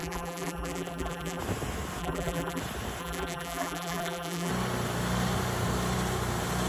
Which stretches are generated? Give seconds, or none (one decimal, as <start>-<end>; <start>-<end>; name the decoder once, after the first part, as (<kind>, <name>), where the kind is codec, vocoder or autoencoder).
0.0-1.4 (vocoder, BigVGAN v2); 2.0-2.6; 3.0-4.5